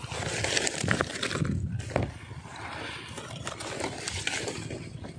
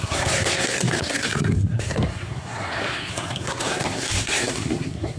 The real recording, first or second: first